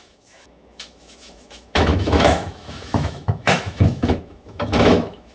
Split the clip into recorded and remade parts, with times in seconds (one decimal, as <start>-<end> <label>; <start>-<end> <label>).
0.0-5.3 remade